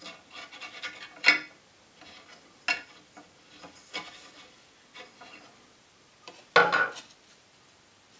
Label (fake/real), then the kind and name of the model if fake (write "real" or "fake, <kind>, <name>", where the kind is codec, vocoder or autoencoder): real